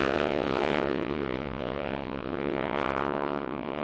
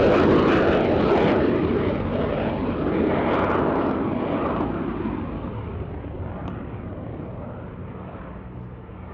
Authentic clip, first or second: second